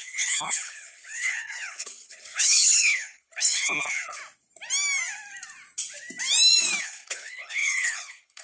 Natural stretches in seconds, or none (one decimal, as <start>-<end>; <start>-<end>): 4.2-6.8